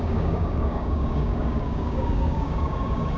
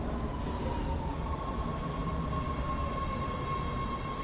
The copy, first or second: first